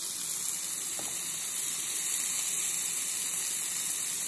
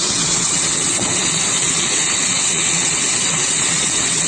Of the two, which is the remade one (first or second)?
second